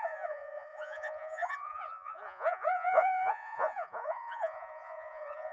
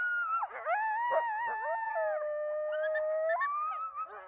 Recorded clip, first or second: second